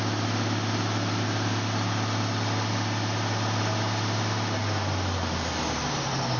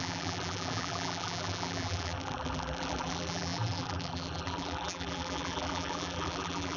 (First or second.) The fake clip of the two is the second